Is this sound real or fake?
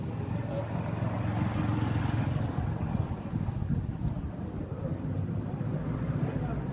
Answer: real